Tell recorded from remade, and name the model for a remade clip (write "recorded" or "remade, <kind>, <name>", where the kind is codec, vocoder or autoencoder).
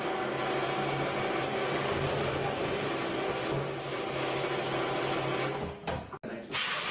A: recorded